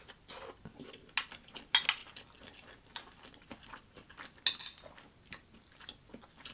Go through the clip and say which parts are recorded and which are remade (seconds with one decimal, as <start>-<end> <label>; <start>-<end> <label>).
0.0-6.5 recorded